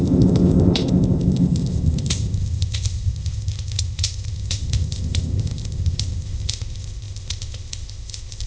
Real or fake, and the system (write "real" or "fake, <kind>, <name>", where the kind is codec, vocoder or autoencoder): fake, codec, ZipCodec